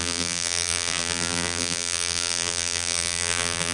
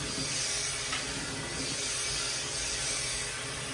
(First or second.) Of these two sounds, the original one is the second